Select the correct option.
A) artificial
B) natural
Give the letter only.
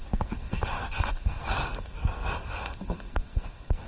A